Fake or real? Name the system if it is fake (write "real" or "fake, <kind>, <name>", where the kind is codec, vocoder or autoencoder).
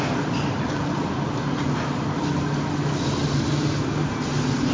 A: real